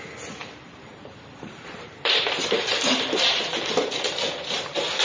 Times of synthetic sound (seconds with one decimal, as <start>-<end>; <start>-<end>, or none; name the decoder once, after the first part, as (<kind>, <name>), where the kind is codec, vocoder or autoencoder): 0.4-3.4 (vocoder, BigVGAN v2)